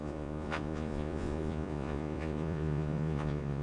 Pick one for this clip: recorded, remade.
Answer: remade